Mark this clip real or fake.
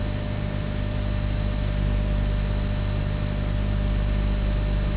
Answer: real